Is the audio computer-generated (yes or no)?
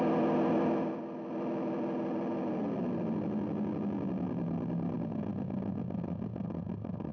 no